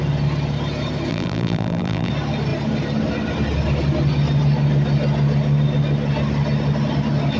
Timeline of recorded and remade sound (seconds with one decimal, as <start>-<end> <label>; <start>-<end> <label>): 0.0-1.1 recorded; 1.1-2.1 remade; 2.1-7.4 recorded